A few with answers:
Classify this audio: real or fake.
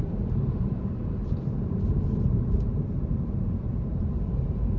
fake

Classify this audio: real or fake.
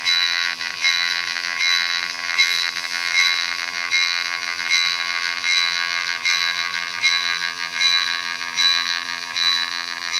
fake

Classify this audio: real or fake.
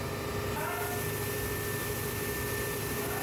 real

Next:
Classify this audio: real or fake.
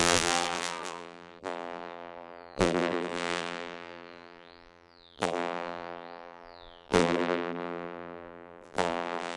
fake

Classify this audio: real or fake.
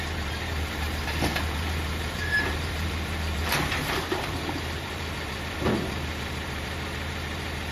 fake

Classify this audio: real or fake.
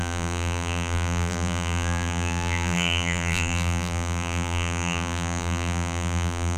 fake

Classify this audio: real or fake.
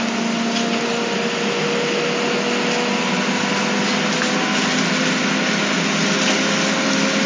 real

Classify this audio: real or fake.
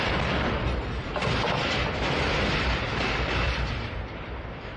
fake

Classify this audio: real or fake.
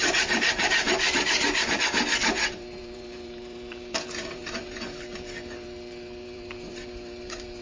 fake